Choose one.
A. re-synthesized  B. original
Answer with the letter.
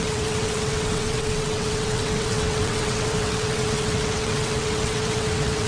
A